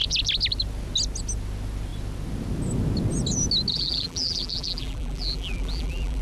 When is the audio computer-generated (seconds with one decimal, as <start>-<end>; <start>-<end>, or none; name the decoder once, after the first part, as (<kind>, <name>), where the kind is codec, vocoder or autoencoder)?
3.7-6.2 (vocoder, BigVGAN v2)